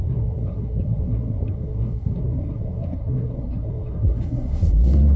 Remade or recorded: remade